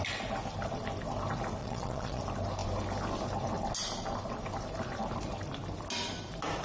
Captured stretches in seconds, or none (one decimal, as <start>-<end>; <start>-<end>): 0.0-1.6; 2.2-6.6